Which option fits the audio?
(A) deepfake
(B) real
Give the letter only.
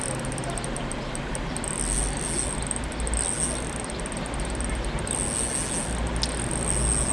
B